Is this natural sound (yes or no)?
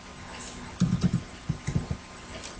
yes